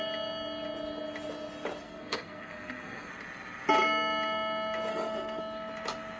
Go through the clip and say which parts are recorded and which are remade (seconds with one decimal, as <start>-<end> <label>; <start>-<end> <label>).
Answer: 0.0-1.8 recorded; 1.8-3.1 remade; 3.1-4.9 recorded; 4.9-5.4 remade; 5.4-6.2 recorded